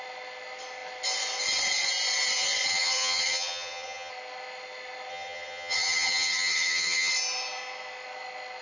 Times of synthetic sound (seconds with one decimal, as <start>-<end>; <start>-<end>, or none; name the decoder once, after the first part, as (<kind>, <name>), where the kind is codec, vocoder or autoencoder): 2.7-4.1 (vocoder, HiFi-GAN); 5.1-7.1